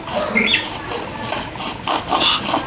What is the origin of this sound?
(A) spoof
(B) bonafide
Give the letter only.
B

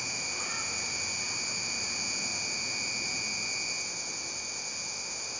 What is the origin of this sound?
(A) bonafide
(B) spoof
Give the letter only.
B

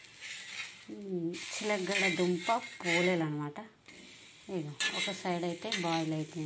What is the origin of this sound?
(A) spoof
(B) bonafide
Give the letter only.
B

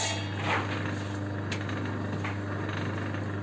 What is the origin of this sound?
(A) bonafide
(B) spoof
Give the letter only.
A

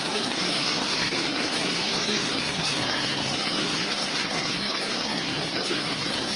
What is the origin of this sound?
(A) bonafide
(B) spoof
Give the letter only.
B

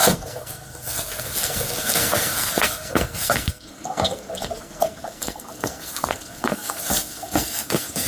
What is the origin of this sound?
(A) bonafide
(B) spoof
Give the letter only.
B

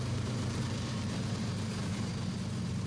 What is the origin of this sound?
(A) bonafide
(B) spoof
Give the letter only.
B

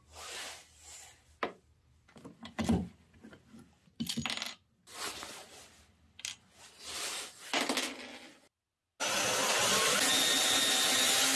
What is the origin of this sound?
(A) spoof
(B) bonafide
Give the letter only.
B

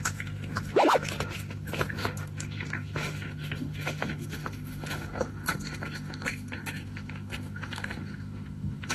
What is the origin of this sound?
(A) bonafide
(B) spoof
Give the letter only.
B